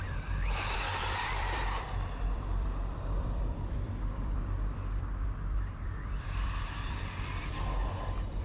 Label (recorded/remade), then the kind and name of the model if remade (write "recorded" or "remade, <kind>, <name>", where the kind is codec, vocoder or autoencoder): remade, vocoder, BigVGAN v2